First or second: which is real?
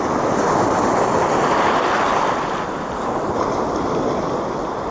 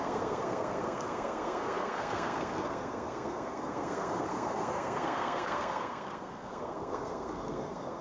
first